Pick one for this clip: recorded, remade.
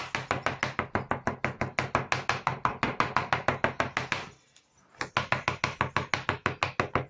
recorded